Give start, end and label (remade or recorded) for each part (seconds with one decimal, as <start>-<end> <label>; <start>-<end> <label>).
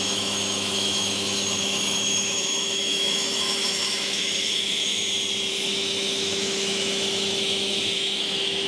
0.0-5.0 remade; 5.0-5.5 recorded; 5.5-8.7 remade